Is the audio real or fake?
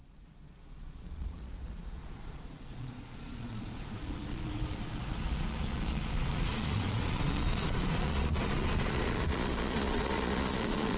fake